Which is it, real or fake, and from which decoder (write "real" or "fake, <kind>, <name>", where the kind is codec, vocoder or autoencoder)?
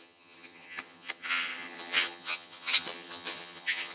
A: fake, vocoder, HiFi-GAN